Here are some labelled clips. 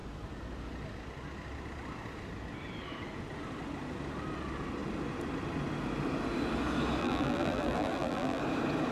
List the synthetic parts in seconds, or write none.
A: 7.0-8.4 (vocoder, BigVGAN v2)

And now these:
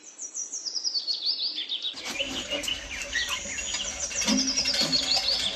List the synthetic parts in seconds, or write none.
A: none

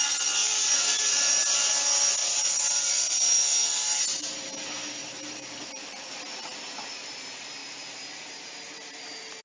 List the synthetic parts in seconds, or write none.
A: 0.4-1.7 (vocoder, BigVGAN v2); 2.2-2.9; 5.0-5.9

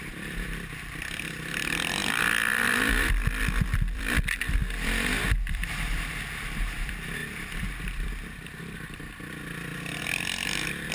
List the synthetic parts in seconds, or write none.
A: 0.0-4.6 (vocoder, BigVGAN v2); 5.5-9.7

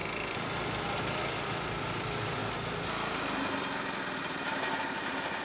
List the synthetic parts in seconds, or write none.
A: 1.8-2.4 (vocoder, BigVGAN v2); 4.2-5.4